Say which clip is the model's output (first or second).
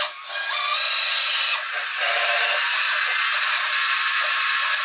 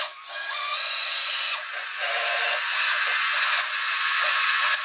second